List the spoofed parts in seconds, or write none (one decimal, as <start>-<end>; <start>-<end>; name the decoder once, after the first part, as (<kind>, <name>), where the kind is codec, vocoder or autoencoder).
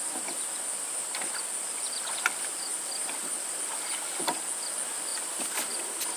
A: 2.7-3.7 (vocoder, BigVGAN v2); 5.1-6.2